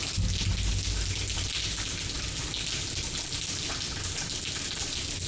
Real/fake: real